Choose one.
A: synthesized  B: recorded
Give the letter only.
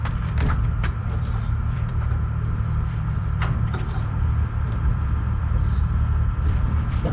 A